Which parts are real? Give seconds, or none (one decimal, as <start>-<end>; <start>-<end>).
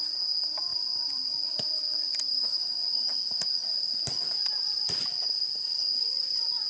0.0-2.3; 2.8-6.7